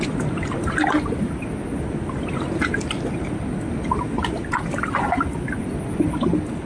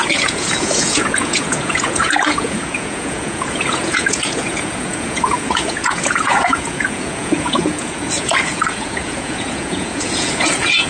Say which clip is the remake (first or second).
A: second